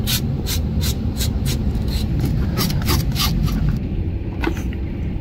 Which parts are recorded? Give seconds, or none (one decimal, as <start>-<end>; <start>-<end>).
0.0-1.6; 4.0-5.2